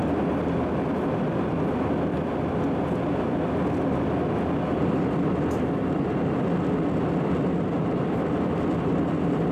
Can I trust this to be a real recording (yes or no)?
yes